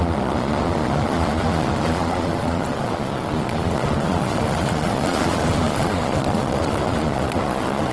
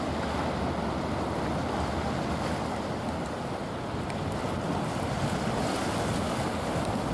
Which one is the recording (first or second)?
second